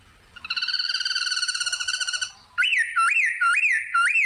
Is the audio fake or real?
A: real